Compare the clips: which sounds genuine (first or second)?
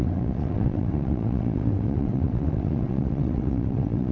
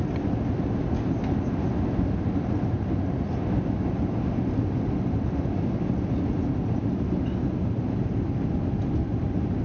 second